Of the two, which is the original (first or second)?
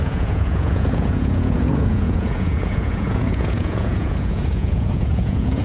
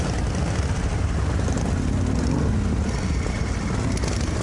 second